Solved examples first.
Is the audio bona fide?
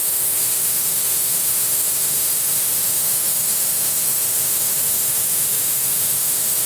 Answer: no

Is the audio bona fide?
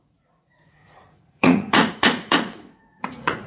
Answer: no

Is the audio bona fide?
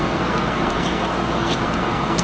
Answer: no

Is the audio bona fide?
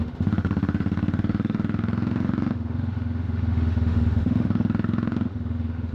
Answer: no